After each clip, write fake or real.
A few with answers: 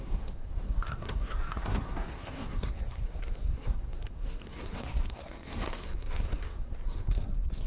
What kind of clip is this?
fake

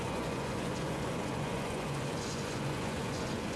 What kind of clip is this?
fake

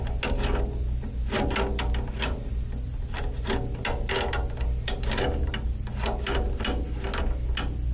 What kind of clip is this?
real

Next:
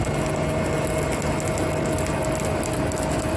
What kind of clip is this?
real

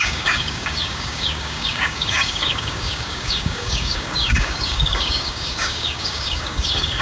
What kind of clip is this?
fake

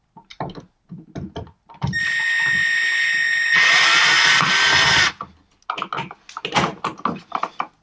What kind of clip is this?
real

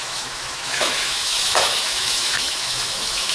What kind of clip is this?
fake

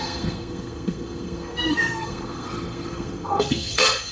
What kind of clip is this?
fake